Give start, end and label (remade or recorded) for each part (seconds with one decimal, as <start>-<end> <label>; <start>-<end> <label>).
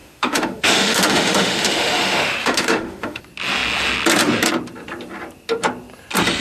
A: 0.0-3.2 remade; 3.2-6.4 recorded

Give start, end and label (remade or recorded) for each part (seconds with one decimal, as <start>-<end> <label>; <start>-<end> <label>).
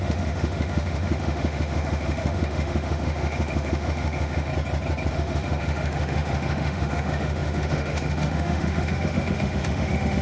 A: 0.0-4.5 remade; 4.5-5.1 recorded; 5.1-10.2 remade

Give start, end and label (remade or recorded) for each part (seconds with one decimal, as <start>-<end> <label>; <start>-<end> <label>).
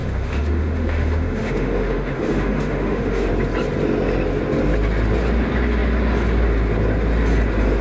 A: 0.0-3.3 remade; 3.3-7.8 recorded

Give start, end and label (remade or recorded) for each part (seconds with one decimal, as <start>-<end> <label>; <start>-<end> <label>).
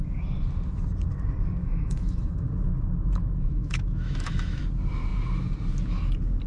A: 0.0-1.6 recorded; 1.6-2.5 remade; 2.5-3.5 recorded; 3.5-4.6 remade; 4.6-6.5 recorded